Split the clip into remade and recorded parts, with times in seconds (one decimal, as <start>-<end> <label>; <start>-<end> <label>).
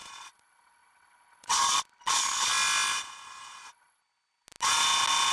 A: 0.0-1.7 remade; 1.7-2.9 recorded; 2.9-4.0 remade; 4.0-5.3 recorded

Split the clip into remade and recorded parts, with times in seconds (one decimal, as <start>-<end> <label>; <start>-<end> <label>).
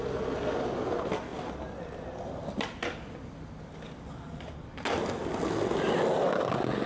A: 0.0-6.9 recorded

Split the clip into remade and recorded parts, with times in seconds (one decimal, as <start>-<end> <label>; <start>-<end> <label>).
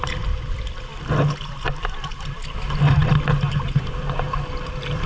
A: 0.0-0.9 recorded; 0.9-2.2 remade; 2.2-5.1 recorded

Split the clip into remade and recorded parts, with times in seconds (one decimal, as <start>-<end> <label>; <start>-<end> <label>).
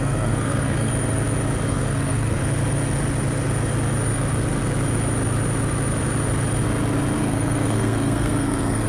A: 0.0-0.9 remade; 0.9-1.7 recorded; 1.7-2.4 remade; 2.4-7.2 recorded; 7.2-8.9 remade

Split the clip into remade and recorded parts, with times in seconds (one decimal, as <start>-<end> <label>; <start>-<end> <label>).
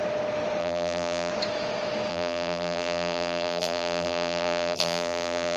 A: 0.0-0.6 recorded; 0.6-1.3 remade; 1.3-2.1 recorded; 2.1-5.6 remade